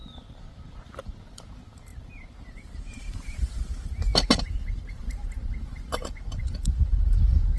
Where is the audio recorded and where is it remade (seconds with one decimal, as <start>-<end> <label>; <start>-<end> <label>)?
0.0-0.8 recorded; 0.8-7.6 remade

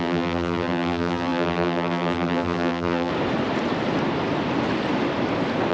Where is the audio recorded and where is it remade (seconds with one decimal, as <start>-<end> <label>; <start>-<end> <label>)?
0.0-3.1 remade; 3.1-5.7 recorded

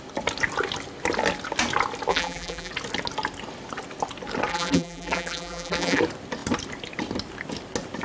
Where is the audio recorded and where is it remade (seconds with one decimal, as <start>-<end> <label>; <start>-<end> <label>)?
0.0-2.1 recorded; 2.1-2.7 remade; 2.7-4.5 recorded; 4.5-6.0 remade; 6.0-8.0 recorded

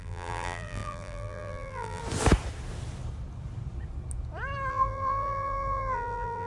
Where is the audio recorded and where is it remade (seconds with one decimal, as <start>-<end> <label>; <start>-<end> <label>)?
0.0-2.0 remade; 2.0-4.7 recorded; 4.7-6.5 remade

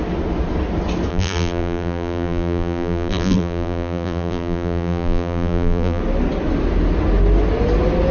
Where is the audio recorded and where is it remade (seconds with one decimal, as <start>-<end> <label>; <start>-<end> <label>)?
0.0-1.1 recorded; 1.1-6.0 remade; 6.0-8.1 recorded

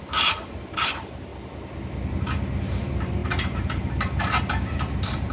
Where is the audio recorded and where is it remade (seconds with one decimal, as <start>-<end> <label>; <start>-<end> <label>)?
0.0-1.3 remade; 1.3-2.1 recorded; 2.1-5.3 remade

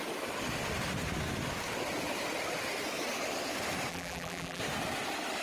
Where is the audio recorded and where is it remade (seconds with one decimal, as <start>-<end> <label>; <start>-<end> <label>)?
0.0-3.9 recorded; 3.9-4.6 remade; 4.6-5.4 recorded